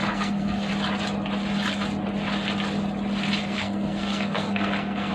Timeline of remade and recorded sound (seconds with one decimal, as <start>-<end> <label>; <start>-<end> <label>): 0.0-0.7 remade; 0.7-3.4 recorded; 3.4-5.1 remade